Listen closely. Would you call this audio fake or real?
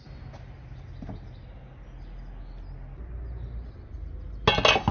real